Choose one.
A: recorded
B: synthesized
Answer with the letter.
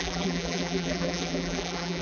B